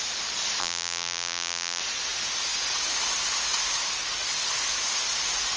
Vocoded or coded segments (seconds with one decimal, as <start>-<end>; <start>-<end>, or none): 0.6-1.8